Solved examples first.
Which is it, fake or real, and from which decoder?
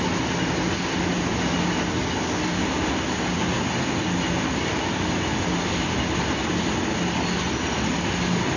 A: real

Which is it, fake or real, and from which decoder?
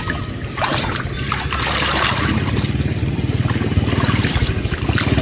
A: real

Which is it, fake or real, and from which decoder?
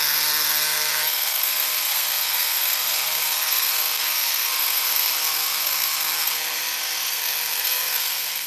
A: fake, codec, SNAC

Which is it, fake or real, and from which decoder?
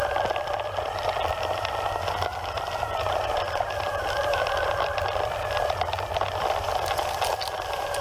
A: real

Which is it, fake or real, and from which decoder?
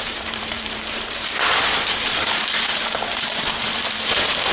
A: fake, vocoder, BigVGAN v2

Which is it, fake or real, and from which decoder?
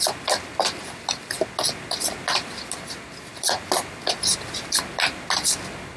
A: real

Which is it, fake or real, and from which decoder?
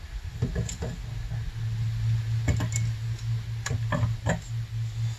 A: real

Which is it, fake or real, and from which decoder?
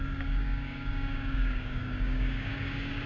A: fake, codec, DAC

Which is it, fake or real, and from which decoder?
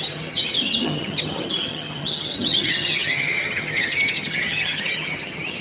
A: fake, vocoder, HiFi-GAN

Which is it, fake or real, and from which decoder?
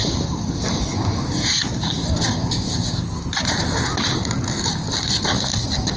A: real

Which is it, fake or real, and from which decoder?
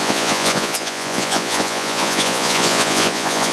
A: fake, vocoder, Vocos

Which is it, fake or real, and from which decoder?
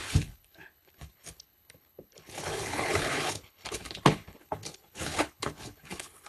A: fake, codec, HILCodec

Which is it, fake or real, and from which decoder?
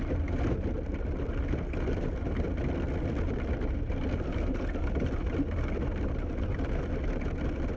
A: real